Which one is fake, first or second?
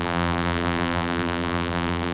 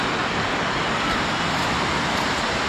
first